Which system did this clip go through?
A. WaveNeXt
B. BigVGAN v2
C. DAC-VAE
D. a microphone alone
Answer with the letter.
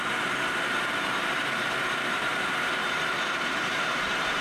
B